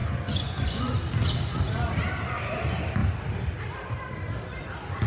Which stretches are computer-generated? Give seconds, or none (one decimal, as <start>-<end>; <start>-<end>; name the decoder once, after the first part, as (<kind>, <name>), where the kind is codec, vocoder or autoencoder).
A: 0.0-1.0 (vocoder, Vocos)